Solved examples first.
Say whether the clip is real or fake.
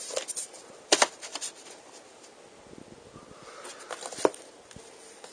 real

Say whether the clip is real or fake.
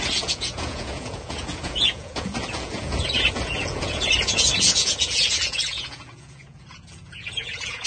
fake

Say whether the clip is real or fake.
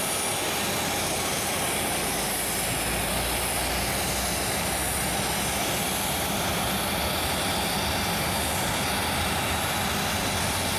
real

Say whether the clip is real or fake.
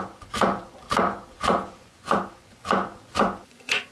fake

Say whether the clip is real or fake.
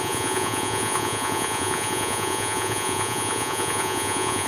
fake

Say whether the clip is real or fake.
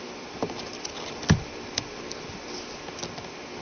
real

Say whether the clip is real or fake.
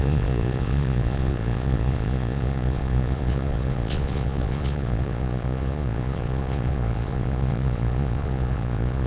fake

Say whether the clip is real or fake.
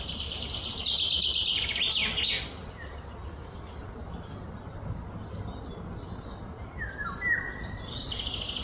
real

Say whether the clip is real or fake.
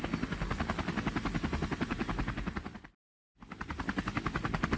real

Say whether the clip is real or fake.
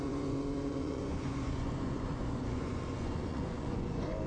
fake